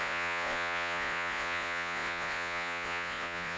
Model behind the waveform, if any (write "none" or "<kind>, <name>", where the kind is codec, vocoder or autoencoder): vocoder, Vocos